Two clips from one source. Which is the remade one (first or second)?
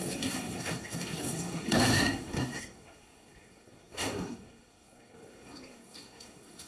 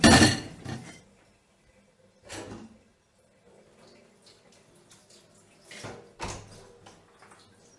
first